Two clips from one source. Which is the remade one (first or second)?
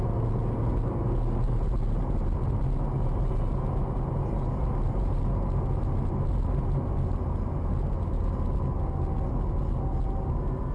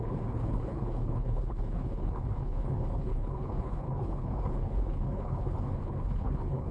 second